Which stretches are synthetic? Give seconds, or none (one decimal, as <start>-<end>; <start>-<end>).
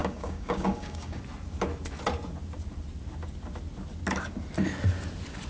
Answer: 0.0-1.2